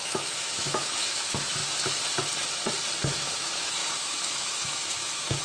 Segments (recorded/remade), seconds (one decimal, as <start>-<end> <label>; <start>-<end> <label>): 0.0-1.6 remade; 1.6-3.0 recorded; 3.0-5.4 remade